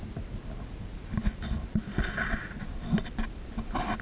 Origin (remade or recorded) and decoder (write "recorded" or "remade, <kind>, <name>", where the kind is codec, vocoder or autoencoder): recorded